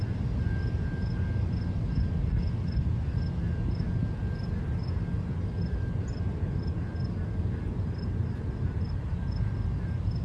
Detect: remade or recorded recorded